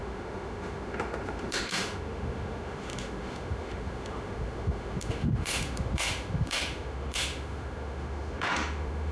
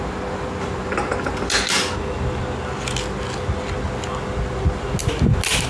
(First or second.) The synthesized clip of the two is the first